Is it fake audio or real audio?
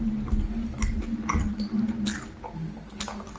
real